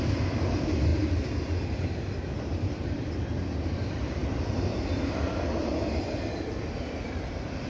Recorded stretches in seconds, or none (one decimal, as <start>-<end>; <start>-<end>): 0.9-1.8